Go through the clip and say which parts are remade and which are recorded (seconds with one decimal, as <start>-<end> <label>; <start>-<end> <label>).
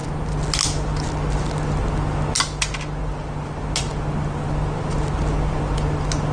0.0-6.3 recorded